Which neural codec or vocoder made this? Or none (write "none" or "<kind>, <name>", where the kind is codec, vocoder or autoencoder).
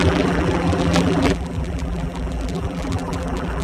vocoder, BigVGAN v2